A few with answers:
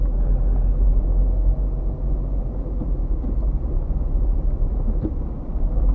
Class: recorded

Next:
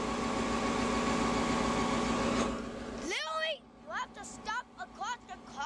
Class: recorded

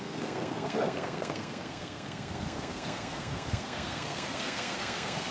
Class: remade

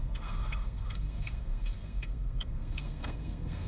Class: remade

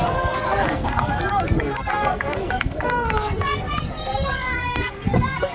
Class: remade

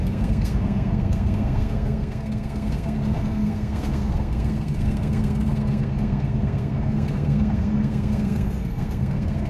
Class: remade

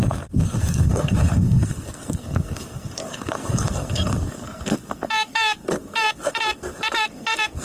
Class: remade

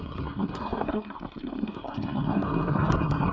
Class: remade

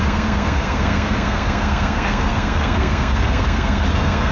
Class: remade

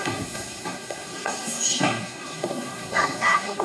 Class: remade